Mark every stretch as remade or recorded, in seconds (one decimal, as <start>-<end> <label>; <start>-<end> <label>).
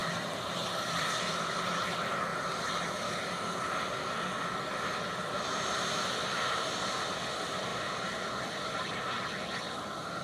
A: 0.0-10.2 recorded